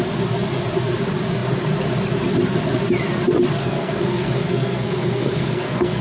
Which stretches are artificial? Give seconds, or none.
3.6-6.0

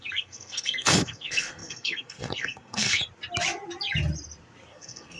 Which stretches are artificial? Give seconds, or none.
0.0-3.0; 4.7-5.2

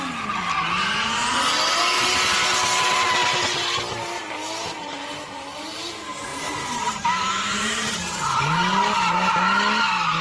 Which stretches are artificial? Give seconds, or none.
1.2-2.0; 6.3-8.0

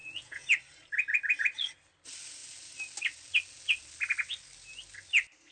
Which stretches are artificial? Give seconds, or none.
0.0-0.5